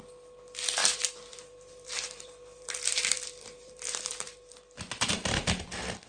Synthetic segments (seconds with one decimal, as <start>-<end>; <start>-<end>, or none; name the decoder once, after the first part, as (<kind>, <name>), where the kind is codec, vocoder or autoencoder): 0.8-4.5 (vocoder, BigVGAN v2)